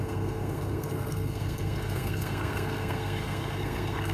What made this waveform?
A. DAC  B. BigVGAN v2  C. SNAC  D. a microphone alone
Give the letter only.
C